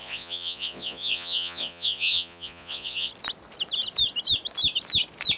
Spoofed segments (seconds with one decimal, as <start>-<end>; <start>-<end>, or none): 0.0-3.1